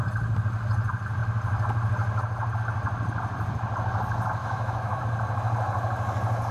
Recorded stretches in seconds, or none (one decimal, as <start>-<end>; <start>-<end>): 0.0-4.4; 5.0-6.5